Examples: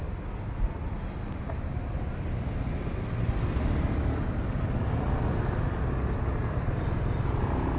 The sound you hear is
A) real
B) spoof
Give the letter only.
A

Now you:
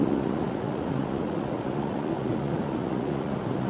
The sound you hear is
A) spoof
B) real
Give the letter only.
A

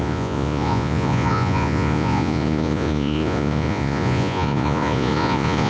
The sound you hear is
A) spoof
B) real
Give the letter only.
A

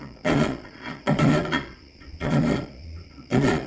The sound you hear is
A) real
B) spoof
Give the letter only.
B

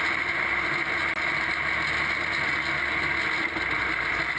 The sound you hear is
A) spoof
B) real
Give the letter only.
B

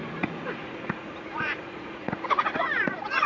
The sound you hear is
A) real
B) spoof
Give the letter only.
B